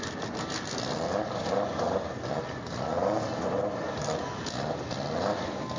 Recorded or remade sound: recorded